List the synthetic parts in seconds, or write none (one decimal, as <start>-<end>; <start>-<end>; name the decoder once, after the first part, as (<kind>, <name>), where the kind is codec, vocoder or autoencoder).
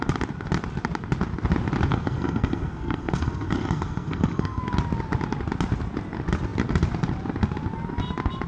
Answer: 1.9-4.6 (codec, SNAC)